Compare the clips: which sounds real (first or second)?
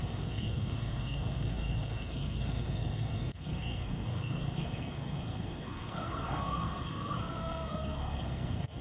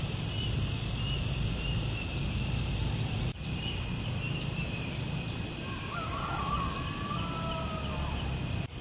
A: second